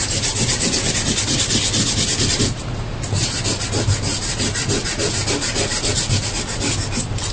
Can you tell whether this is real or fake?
real